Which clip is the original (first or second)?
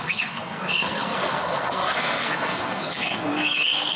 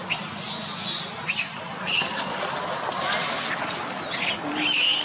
second